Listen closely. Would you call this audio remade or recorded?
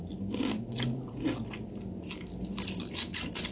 recorded